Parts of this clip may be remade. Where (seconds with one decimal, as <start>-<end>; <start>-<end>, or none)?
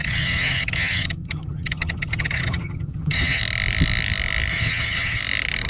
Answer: 0.0-3.4; 4.5-5.2